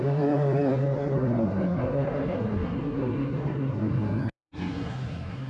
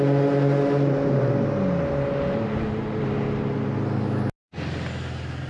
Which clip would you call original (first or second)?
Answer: second